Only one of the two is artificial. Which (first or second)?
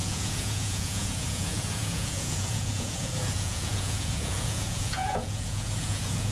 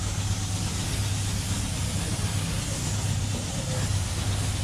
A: first